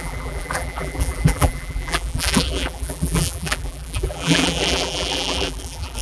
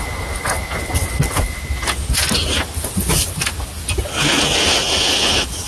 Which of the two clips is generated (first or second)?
first